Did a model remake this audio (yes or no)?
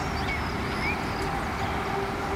no